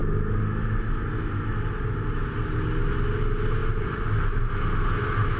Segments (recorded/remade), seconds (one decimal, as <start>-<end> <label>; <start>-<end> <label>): 0.0-5.4 recorded